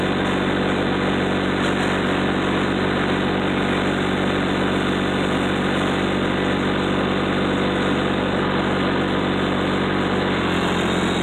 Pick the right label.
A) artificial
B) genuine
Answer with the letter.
B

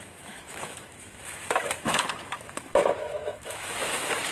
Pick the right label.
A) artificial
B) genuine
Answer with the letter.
A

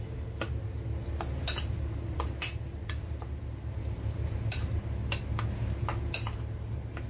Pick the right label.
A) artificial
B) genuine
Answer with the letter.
B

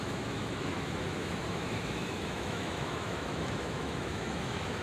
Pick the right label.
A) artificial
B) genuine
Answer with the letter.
A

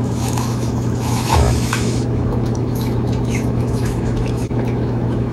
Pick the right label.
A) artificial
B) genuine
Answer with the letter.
A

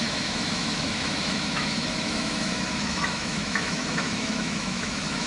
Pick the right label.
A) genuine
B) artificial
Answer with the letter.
B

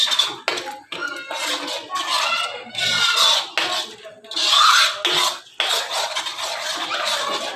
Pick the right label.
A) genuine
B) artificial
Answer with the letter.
A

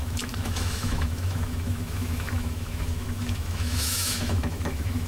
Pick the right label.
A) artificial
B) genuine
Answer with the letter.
A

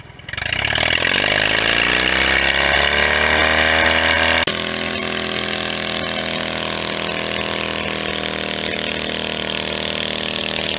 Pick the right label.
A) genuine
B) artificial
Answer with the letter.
A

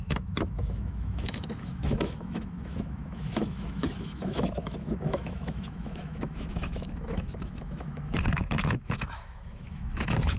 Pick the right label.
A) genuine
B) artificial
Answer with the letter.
B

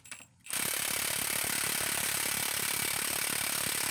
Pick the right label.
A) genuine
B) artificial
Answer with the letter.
A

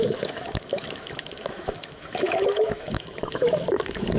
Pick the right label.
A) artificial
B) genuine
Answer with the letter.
A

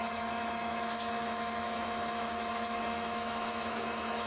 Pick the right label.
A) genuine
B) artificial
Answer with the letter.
B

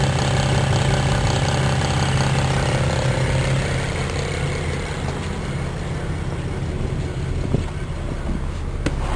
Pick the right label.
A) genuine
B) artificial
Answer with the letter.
A